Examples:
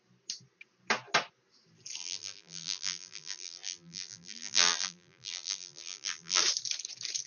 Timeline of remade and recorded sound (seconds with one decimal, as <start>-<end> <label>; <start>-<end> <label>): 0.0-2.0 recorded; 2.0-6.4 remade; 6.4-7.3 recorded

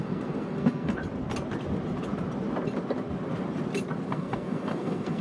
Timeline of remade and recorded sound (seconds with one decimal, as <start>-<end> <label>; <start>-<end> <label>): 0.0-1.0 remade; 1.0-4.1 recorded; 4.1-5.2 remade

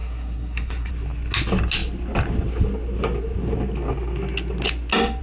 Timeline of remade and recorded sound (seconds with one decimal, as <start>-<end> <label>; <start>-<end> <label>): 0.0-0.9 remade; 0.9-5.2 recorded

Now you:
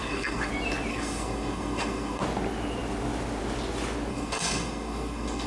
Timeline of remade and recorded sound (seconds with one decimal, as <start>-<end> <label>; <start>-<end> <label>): 0.0-0.5 remade; 0.5-0.9 recorded; 0.9-2.2 remade; 2.2-4.1 recorded; 4.1-5.5 remade